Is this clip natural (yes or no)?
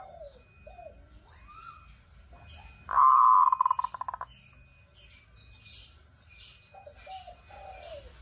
yes